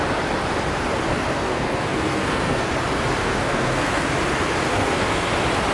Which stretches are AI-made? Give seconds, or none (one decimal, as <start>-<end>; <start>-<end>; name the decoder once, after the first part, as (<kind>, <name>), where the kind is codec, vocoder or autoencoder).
1.1-2.7 (codec, SNAC); 3.2-4.0; 4.7-5.3